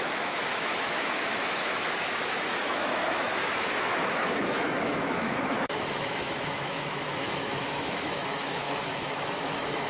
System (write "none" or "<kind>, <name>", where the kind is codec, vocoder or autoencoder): autoencoder, DAC-VAE